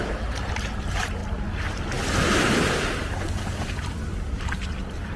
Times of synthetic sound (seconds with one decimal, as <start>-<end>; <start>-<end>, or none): none